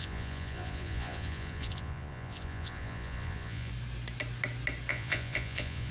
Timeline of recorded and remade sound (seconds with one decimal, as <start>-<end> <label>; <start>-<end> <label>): 0.0-3.7 remade; 3.7-4.9 recorded; 4.9-5.9 remade